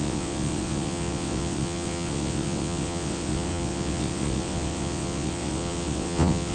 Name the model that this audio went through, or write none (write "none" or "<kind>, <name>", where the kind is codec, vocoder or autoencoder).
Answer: vocoder, WaveNeXt